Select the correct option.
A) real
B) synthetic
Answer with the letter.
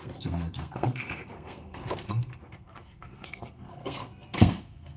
B